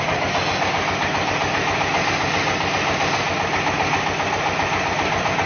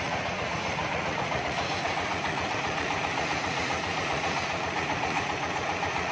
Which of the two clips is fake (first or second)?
second